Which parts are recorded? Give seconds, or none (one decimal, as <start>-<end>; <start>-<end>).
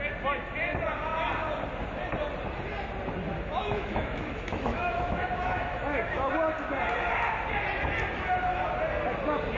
0.0-3.6; 6.3-9.6